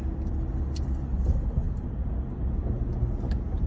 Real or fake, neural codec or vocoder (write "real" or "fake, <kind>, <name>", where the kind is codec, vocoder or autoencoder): real